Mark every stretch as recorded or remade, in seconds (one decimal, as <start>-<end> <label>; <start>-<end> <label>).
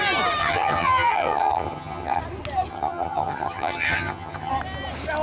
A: 0.0-0.4 recorded; 0.4-2.2 remade; 2.2-2.7 recorded; 2.7-4.5 remade; 4.5-5.2 recorded